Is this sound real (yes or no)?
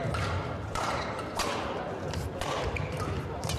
yes